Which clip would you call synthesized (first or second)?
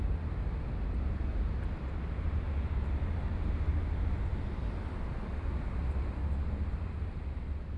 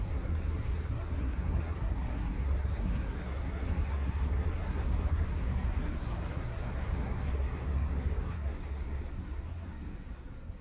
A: second